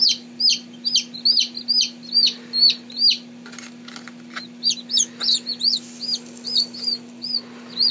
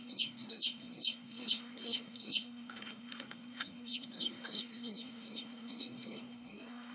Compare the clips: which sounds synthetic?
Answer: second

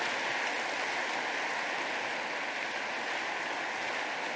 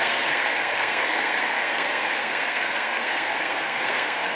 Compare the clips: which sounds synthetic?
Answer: second